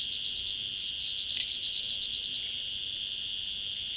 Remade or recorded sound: recorded